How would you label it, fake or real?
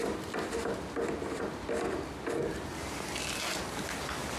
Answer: real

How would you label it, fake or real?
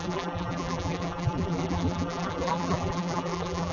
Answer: fake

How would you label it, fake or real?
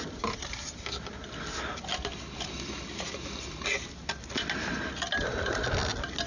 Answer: real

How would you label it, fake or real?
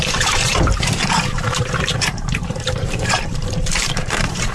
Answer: fake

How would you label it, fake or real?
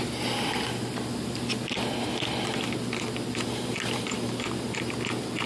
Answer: real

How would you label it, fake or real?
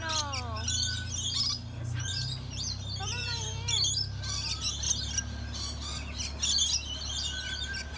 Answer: real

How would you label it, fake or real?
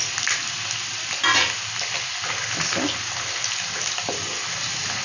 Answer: real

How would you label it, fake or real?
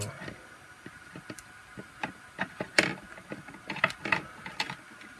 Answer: real